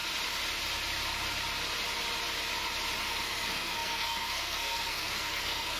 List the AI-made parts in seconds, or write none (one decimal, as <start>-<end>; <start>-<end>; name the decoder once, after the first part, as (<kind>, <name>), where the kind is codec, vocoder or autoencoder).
3.0-5.8 (codec, SNAC)